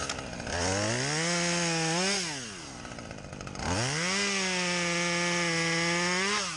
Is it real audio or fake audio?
real